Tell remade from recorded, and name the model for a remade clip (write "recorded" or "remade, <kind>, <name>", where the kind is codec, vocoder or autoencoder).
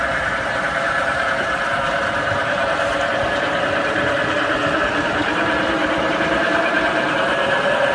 remade, vocoder, BigVGAN v2